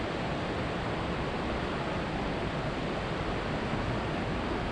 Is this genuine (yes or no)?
yes